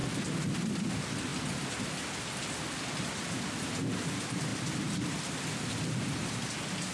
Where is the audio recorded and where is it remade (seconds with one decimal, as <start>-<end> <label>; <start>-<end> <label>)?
0.0-6.9 recorded